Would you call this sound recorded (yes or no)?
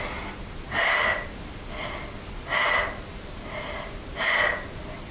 yes